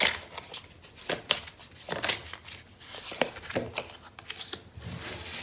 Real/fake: real